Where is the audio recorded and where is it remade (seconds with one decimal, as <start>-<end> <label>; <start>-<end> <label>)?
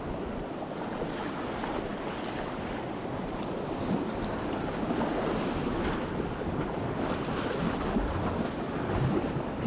0.0-9.7 recorded